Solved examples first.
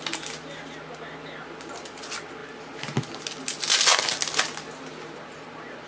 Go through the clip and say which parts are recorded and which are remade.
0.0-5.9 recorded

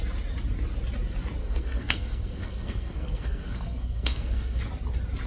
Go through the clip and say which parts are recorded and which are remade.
0.0-1.4 recorded; 1.4-4.6 remade; 4.6-5.3 recorded

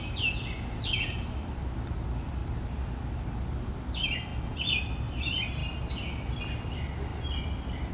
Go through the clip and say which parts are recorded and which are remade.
0.0-7.9 recorded